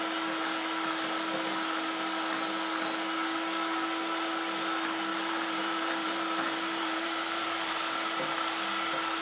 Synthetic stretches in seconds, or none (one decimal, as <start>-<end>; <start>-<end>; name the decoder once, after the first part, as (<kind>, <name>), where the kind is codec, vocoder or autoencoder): 5.1-7.7 (vocoder, BigVGAN v2)